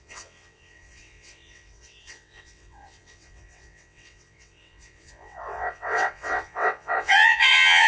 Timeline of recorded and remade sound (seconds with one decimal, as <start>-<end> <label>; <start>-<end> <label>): 0.0-7.9 remade